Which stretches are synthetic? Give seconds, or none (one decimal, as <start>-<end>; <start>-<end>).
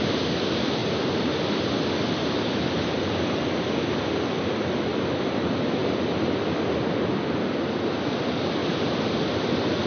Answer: 0.8-1.9; 8.6-9.2